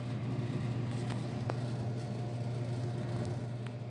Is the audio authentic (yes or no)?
yes